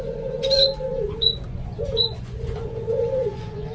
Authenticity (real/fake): fake